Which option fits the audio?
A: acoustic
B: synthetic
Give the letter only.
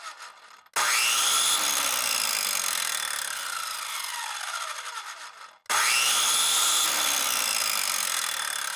A